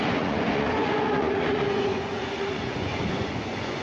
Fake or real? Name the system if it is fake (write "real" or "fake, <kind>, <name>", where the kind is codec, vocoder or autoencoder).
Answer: fake, vocoder, Vocos